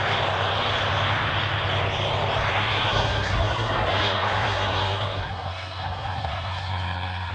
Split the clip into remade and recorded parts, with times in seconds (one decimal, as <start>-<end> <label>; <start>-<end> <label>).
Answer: 0.0-2.5 recorded; 2.5-7.3 remade